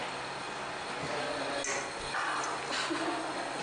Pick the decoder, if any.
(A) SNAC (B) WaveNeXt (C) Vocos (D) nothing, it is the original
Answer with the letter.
D